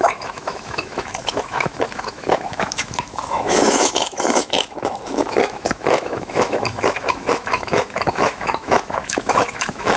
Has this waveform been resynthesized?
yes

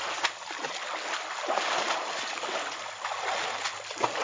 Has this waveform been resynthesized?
no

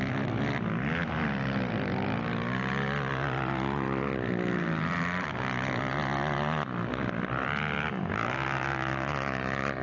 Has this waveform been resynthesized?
no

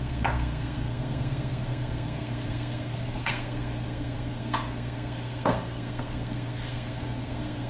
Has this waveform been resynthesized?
yes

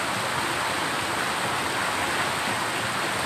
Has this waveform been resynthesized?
no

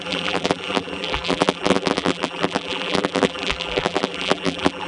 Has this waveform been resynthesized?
yes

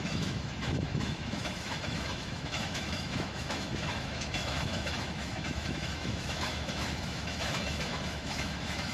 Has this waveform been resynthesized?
yes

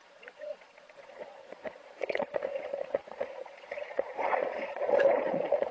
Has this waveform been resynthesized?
yes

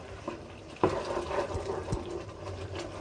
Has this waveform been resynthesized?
no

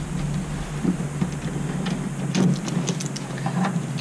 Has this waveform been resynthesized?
no